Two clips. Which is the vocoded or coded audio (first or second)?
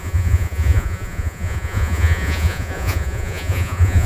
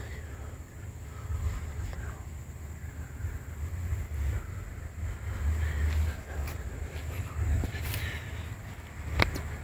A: first